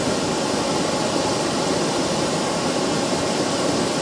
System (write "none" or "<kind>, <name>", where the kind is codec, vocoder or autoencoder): none